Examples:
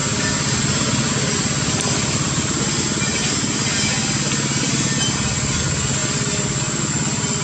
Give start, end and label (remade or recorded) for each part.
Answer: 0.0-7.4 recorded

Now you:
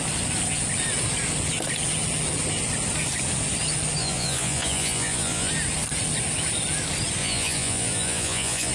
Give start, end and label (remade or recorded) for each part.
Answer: 0.0-4.0 recorded; 4.0-5.5 remade; 5.5-7.2 recorded; 7.2-8.7 remade

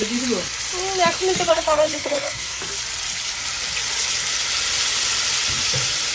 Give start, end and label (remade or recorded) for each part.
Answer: 0.0-1.5 recorded; 1.5-2.6 remade; 2.6-6.1 recorded